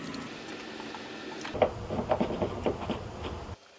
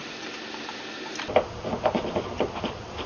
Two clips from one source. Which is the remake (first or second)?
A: second